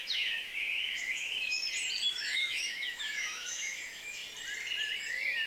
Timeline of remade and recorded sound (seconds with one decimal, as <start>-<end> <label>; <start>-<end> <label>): 0.0-1.6 remade; 1.6-2.1 recorded; 2.1-4.2 remade; 4.2-5.5 recorded